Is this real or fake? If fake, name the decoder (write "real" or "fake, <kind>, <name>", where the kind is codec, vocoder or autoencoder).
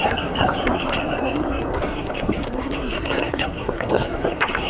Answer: fake, codec, SNAC